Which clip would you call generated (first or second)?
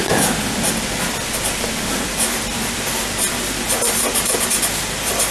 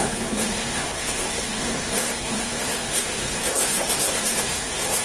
second